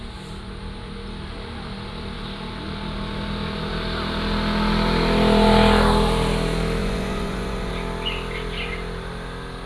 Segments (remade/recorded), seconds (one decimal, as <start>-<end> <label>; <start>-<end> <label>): 0.0-6.8 recorded; 6.8-7.7 remade; 7.7-9.7 recorded